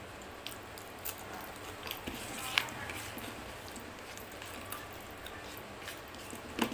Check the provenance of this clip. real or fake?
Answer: real